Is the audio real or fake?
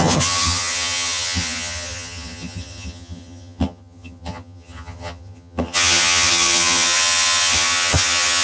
fake